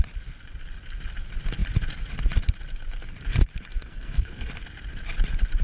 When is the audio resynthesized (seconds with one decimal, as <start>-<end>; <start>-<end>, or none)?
3.7-4.5